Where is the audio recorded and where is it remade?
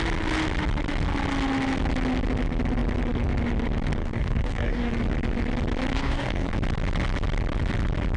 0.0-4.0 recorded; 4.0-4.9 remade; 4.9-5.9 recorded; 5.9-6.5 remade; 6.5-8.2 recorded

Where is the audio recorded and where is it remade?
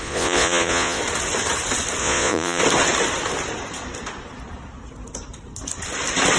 0.0-1.0 remade; 1.0-2.0 recorded; 2.0-2.6 remade; 2.6-6.4 recorded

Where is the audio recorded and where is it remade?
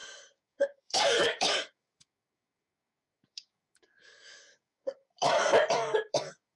0.0-5.5 remade; 5.5-6.1 recorded; 6.1-6.6 remade